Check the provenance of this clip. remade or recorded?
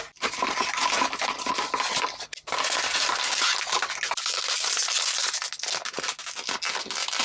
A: recorded